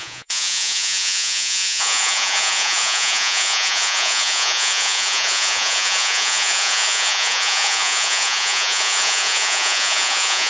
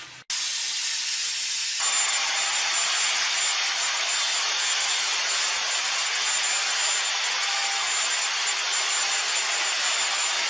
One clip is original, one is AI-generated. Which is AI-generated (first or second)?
first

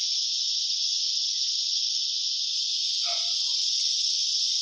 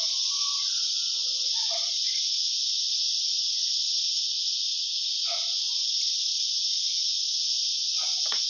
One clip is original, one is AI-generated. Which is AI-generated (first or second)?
second